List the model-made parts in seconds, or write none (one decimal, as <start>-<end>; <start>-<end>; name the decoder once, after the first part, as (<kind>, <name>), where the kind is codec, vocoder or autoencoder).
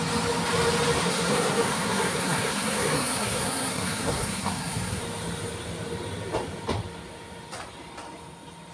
1.0-5.0 (codec, SNAC)